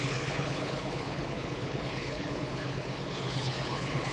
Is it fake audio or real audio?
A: fake